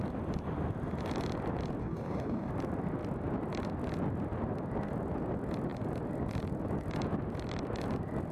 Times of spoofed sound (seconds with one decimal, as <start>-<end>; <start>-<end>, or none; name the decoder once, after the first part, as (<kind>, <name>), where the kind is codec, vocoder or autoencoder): 1.8-2.5 (codec, DAC)

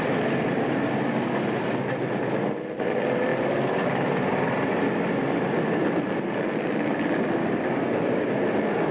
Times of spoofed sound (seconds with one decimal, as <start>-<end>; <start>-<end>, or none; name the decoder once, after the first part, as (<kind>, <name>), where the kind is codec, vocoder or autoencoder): 7.4-8.3 (codec, DAC)

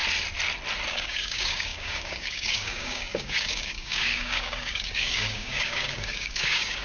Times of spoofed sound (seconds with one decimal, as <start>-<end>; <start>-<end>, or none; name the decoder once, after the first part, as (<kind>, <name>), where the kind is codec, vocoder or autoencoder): 0.9-6.8 (codec, DAC)

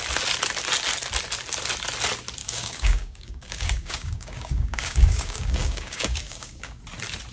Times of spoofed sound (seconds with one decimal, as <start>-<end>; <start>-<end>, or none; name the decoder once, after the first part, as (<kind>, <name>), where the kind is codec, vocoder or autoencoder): 2.4-6.8 (codec, DAC)

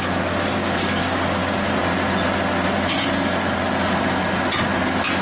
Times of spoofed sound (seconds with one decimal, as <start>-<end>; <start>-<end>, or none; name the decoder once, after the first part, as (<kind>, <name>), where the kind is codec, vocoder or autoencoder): 0.6-1.4 (codec, DAC)

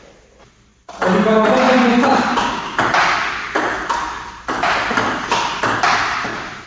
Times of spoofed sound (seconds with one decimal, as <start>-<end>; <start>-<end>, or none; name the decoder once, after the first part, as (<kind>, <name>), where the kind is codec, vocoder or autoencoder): 2.3-2.8 (codec, DAC)